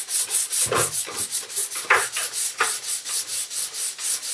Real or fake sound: real